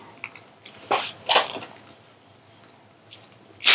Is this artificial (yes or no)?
no